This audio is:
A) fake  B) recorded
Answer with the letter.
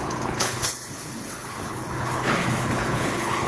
A